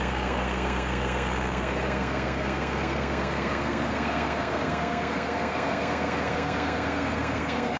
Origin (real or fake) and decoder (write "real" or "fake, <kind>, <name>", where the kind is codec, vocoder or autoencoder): fake, codec, SNAC